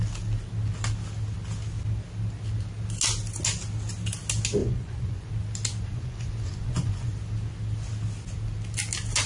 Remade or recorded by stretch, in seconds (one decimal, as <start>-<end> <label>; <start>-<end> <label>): 0.0-4.6 recorded; 4.6-5.3 remade; 5.3-5.9 recorded; 5.9-7.1 remade; 7.1-9.3 recorded